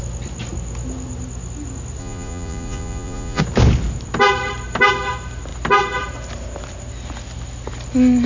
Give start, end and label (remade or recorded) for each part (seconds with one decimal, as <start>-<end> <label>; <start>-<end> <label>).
0.0-2.0 recorded; 2.0-3.4 remade; 3.4-8.3 recorded